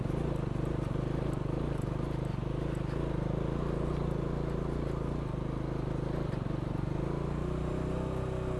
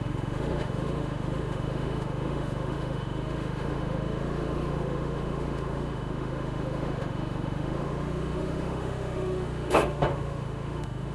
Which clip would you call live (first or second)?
first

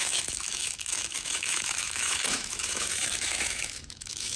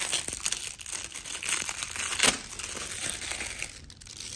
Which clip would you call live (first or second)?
second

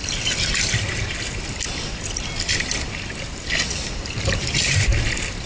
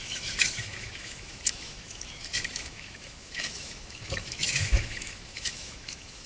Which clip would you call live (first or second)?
first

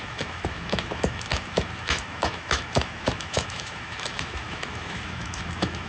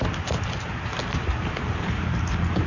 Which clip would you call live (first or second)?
second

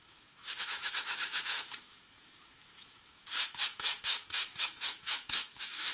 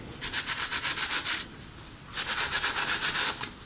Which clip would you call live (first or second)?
second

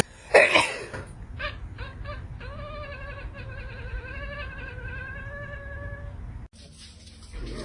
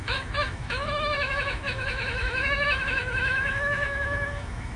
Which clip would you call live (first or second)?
first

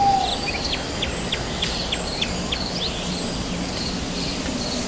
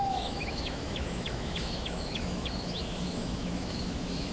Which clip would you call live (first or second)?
first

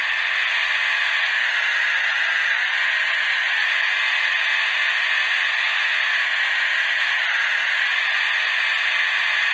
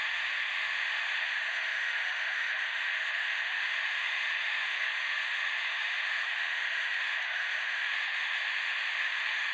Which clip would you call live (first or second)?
first